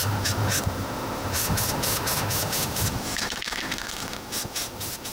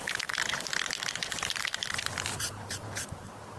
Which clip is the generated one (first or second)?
first